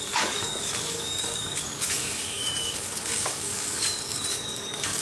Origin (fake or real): fake